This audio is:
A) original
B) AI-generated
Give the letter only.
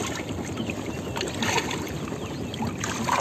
A